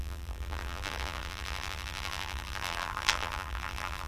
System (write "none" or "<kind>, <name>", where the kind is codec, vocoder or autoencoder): vocoder, BigVGAN v2